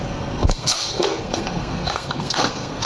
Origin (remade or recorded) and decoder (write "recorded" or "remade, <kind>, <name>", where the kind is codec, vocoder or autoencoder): remade, codec, SNAC